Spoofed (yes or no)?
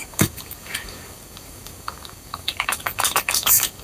yes